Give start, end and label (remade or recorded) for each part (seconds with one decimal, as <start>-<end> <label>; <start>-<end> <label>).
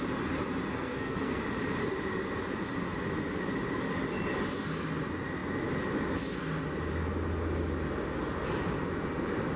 0.0-0.7 recorded; 0.7-1.4 remade; 1.4-9.6 recorded